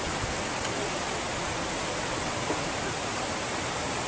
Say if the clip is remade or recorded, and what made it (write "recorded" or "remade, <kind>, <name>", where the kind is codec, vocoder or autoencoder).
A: recorded